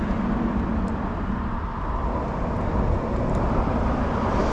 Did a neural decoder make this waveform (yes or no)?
no